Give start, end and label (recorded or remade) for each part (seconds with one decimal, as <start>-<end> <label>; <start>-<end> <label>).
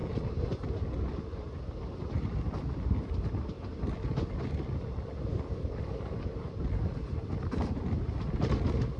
0.0-5.3 recorded; 5.3-6.5 remade; 6.5-9.0 recorded